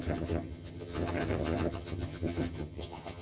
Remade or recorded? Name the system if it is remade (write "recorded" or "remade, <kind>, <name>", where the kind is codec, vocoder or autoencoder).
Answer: remade, vocoder, HiFi-GAN